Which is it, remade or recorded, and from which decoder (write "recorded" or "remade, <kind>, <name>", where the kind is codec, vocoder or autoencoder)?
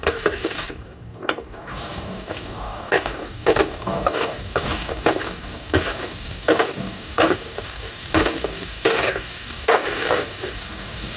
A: remade, codec, DAC